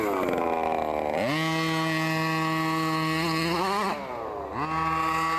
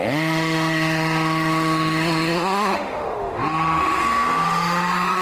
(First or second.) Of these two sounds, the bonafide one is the first